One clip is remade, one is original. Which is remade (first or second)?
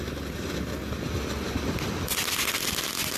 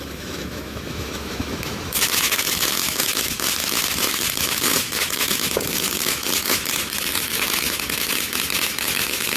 second